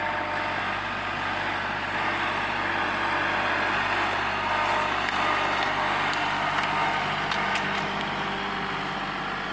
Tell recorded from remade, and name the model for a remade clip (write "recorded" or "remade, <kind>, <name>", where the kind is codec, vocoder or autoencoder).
recorded